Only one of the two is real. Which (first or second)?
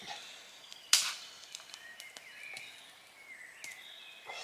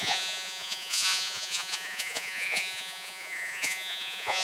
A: first